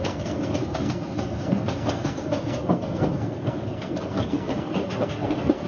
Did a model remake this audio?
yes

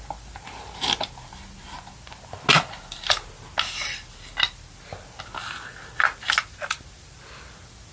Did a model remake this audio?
no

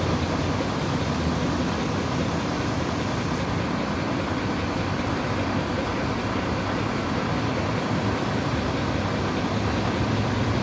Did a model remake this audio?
no